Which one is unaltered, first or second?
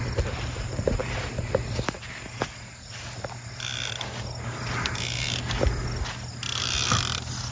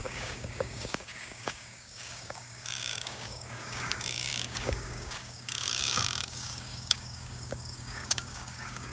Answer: first